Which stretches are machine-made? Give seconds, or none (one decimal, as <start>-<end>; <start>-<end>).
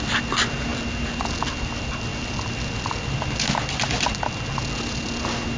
none